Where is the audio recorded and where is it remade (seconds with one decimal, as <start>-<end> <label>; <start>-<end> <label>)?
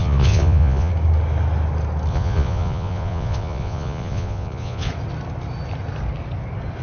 0.0-0.9 remade; 0.9-2.1 recorded; 2.1-4.9 remade; 4.9-6.8 recorded